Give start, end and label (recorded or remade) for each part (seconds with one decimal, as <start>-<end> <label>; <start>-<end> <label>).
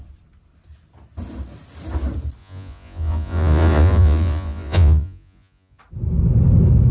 0.0-2.4 recorded; 2.4-5.8 remade; 5.8-6.9 recorded